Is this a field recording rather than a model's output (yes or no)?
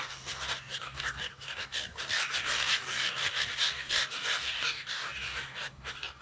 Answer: no